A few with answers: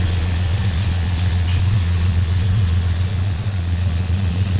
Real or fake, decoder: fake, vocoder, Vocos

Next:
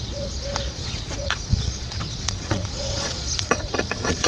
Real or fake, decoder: fake, vocoder, Vocos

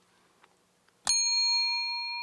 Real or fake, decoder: real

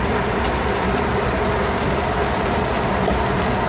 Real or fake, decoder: real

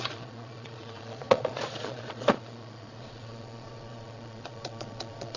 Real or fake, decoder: fake, vocoder, Vocos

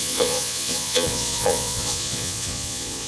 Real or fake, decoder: fake, vocoder, Vocos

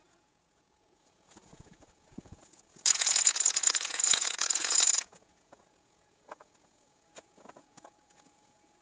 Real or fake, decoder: fake, vocoder, Vocos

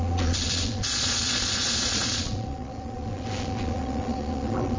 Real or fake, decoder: fake, vocoder, Vocos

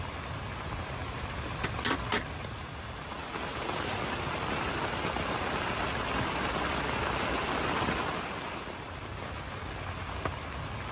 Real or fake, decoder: real